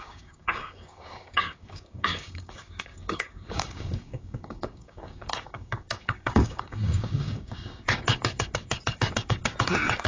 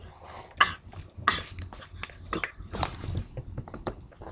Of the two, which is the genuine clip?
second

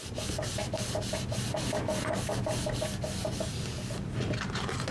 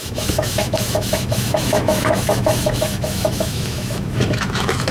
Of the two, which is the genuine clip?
first